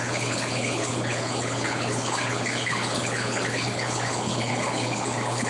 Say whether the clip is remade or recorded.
remade